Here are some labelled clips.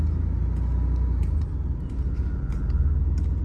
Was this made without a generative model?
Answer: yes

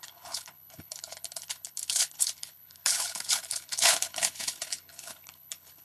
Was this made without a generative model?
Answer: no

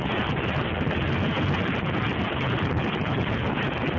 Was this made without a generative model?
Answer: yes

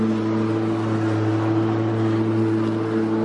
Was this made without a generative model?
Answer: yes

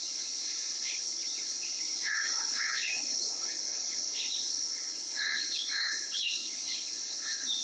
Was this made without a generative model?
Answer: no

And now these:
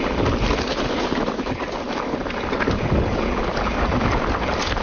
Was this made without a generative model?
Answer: yes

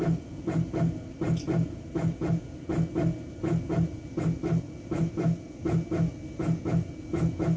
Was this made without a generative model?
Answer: yes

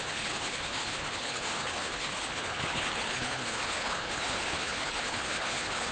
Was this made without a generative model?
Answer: no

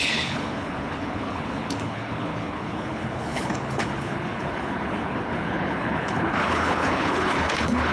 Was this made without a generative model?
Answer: no